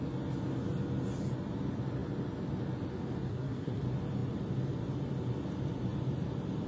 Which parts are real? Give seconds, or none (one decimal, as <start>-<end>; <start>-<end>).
0.0-3.3; 3.8-6.7